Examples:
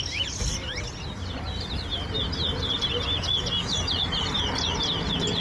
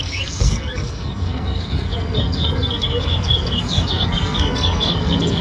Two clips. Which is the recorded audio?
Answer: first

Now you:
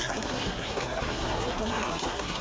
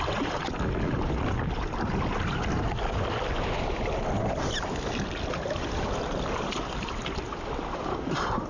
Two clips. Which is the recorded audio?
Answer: second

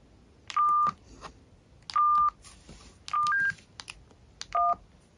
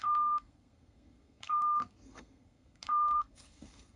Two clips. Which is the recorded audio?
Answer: first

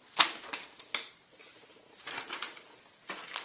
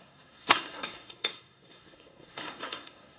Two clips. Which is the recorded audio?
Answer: first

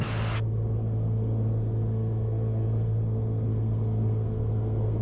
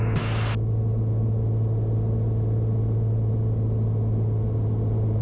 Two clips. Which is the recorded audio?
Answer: second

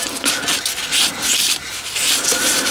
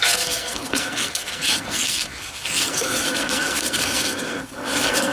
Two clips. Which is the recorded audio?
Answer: first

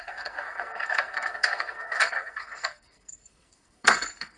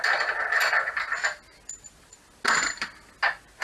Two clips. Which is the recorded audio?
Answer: second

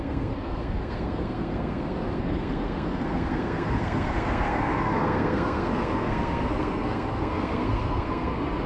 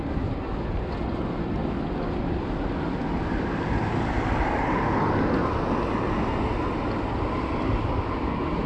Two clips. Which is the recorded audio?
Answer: second